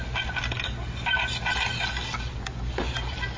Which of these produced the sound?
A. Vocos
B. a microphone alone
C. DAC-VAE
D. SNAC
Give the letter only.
B